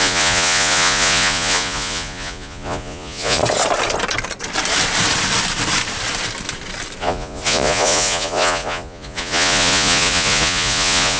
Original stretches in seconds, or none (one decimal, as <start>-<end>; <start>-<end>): 3.4-7.0